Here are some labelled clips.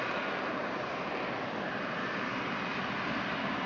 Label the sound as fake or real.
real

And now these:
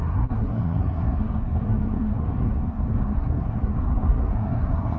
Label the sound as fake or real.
fake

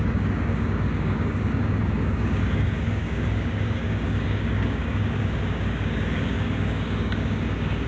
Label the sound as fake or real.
fake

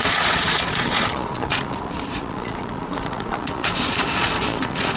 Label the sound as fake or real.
fake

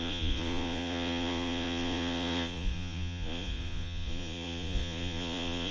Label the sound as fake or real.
fake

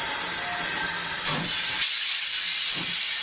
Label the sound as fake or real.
real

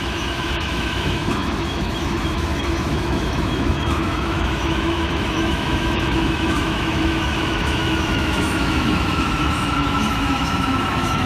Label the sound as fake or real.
fake